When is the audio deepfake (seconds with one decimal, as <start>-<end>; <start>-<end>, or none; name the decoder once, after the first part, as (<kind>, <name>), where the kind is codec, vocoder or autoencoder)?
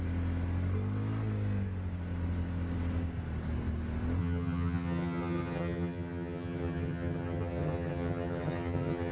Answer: 4.2-9.1 (vocoder, HiFi-GAN)